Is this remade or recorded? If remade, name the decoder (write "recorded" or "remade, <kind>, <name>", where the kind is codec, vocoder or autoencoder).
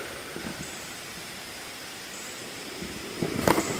remade, vocoder, BigVGAN v2